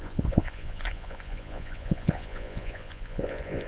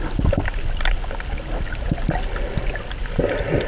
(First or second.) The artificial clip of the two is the first